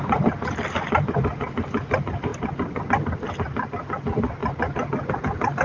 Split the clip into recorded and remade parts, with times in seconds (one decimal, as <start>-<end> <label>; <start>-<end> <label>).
0.0-5.6 recorded